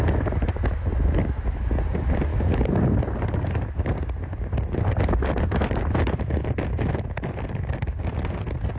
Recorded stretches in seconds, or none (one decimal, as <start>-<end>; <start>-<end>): 0.0-8.8